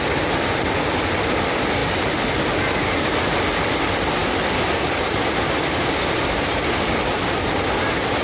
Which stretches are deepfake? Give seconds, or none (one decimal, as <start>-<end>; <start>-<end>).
none